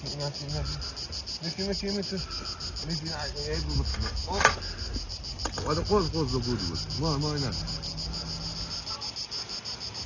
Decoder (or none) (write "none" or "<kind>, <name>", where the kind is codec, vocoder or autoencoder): none